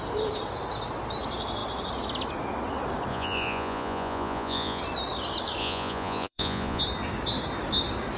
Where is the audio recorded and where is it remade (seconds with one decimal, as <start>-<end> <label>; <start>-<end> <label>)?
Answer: 0.0-3.1 recorded; 3.1-4.8 remade; 4.8-5.6 recorded; 5.6-6.8 remade; 6.8-8.2 recorded